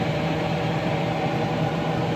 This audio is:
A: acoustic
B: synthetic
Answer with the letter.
B